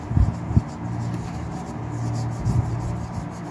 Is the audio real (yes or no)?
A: yes